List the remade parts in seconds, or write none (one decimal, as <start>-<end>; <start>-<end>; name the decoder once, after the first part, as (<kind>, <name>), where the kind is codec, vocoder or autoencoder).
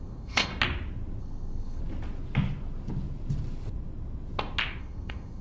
0.0-0.5 (codec, SNAC); 1.2-1.8; 4.8-5.4